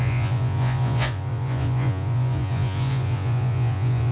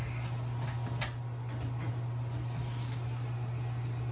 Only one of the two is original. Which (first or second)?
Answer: second